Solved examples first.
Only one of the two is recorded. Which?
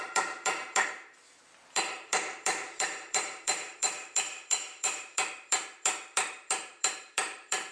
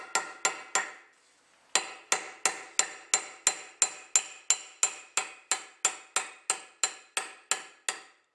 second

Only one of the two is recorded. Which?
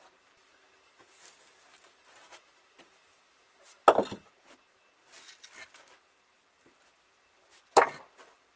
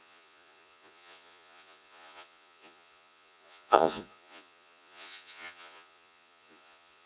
first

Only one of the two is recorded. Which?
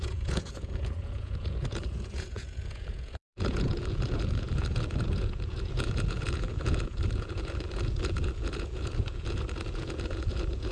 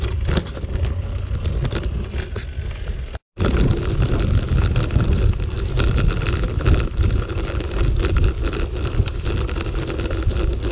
second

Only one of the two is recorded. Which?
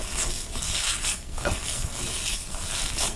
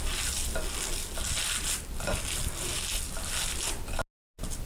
second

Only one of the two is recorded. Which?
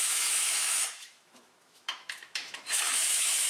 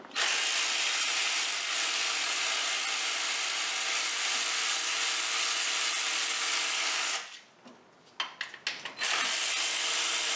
second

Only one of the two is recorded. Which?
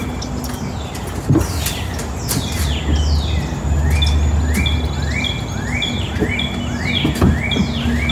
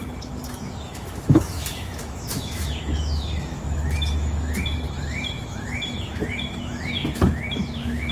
first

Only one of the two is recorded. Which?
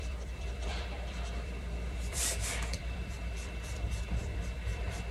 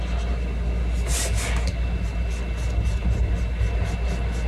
second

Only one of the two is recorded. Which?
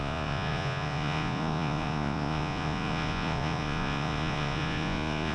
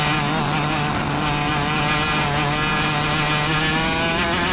second